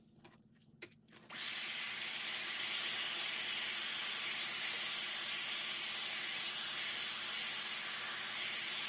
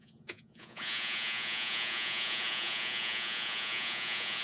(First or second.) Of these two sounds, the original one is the first